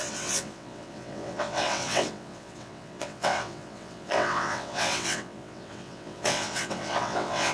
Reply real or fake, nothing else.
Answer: fake